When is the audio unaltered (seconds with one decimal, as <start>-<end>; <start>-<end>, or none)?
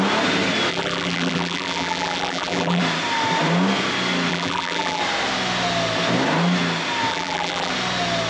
0.0-0.7; 2.8-4.3; 5.0-7.1; 7.7-8.3